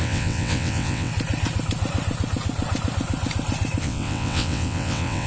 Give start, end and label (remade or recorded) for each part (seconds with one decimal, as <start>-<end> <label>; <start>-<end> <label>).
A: 0.0-1.1 remade; 1.1-3.8 recorded; 3.8-5.3 remade